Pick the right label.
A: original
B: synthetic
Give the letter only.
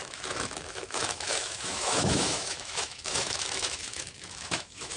B